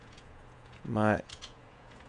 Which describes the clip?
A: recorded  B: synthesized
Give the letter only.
B